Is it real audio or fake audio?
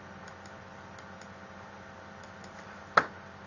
real